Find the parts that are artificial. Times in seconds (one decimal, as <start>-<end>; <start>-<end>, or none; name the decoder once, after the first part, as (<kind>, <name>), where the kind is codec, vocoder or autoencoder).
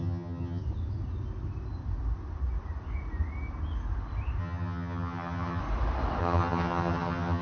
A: 0.0-0.6 (vocoder, HiFi-GAN); 4.4-5.6; 6.2-7.4